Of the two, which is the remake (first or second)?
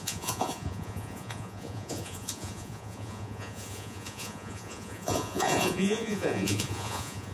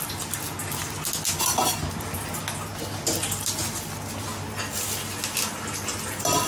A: first